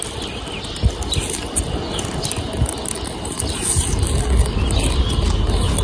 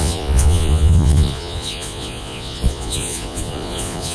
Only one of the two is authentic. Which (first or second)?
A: first